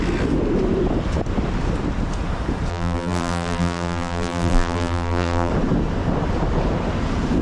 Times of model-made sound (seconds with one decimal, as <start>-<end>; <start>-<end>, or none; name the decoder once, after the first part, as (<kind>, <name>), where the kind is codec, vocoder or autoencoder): 2.7-5.5 (vocoder, BigVGAN v2)